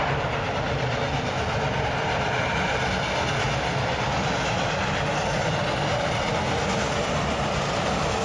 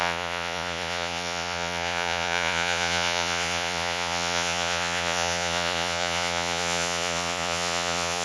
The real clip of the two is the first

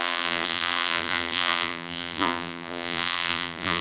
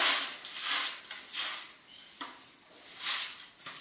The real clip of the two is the second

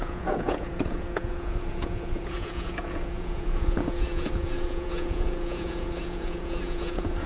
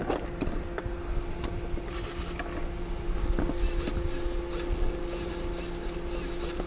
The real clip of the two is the second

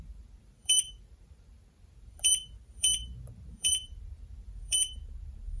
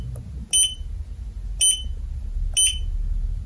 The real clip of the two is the second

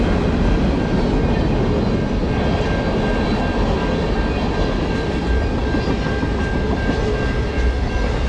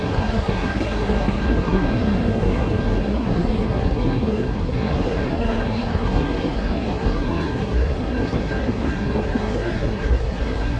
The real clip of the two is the first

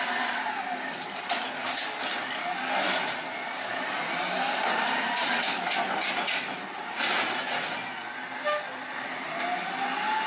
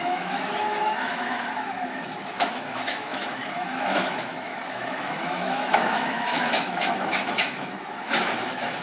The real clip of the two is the first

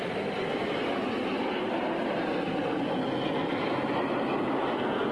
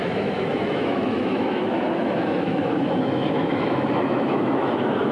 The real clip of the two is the first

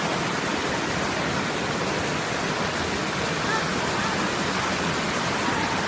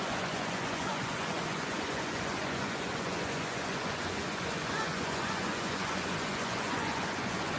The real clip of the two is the first